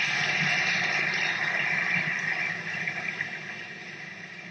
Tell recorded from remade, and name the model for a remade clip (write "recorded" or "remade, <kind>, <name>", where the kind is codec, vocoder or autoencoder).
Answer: recorded